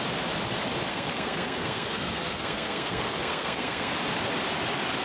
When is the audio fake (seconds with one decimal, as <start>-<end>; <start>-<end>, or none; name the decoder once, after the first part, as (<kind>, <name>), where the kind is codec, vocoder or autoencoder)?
0.9-3.9 (codec, SNAC)